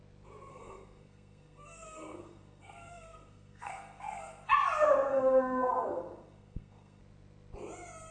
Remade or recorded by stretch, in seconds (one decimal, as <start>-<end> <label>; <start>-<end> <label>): 0.0-0.5 recorded; 0.5-4.5 remade; 4.5-5.1 recorded; 5.1-7.0 remade; 7.0-8.1 recorded